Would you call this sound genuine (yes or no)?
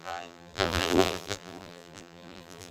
no